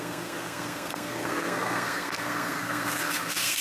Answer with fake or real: fake